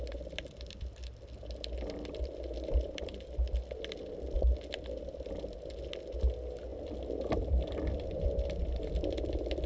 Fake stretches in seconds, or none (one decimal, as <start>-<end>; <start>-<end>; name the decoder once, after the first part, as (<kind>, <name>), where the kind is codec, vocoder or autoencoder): none